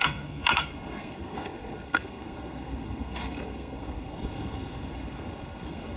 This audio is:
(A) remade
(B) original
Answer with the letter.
A